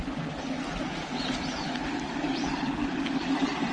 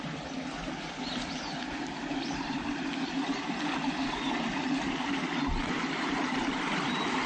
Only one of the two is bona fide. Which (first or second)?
first